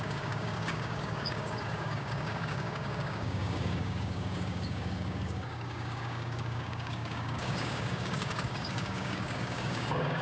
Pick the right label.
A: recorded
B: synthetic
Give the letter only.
B